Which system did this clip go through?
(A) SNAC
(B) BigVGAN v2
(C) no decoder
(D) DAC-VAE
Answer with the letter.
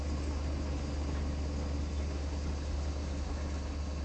C